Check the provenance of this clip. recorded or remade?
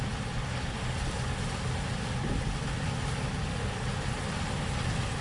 recorded